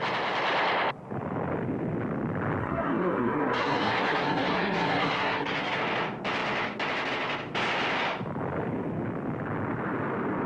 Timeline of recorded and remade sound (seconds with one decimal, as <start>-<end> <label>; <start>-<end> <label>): 0.0-2.6 recorded; 2.6-5.8 remade; 5.8-10.5 recorded